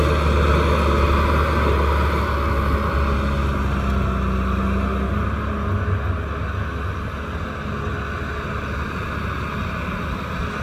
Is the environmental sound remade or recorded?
recorded